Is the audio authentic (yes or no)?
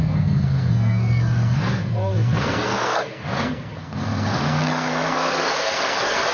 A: no